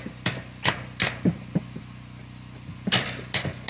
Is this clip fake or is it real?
real